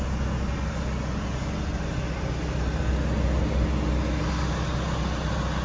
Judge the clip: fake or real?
real